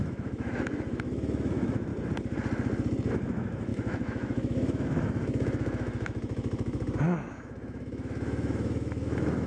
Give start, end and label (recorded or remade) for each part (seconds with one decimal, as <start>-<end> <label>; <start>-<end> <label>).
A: 0.0-1.9 remade; 1.9-3.1 recorded; 3.1-9.5 remade